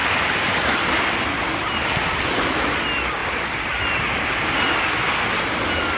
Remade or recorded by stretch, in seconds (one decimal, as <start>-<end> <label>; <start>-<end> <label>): 0.0-1.9 remade; 1.9-3.2 recorded; 3.2-3.8 remade; 3.8-6.0 recorded